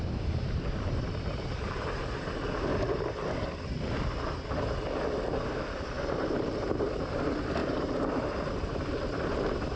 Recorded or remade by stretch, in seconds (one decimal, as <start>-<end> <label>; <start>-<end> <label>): 0.0-2.7 remade; 2.7-5.4 recorded; 5.4-7.6 remade; 7.6-8.5 recorded; 8.5-9.8 remade